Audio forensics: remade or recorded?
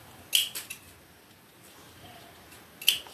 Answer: recorded